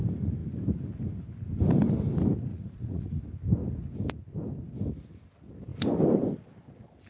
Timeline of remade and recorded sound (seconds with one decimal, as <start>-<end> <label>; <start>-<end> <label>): 0.0-2.5 recorded; 2.5-3.2 remade; 3.2-7.1 recorded